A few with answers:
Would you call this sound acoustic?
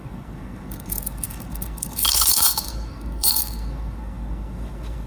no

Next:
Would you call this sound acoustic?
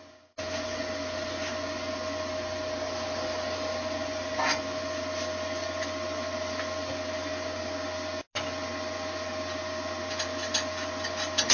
yes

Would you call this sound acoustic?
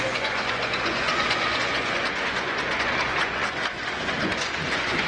no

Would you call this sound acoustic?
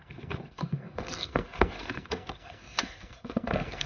no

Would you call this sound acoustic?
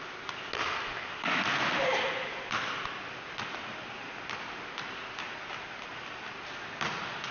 yes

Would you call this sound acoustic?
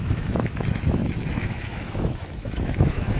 no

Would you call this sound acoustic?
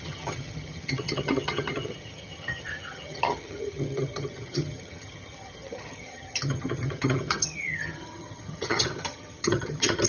no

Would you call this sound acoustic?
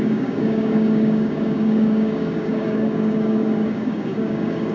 no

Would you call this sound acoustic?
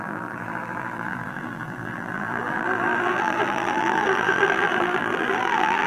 no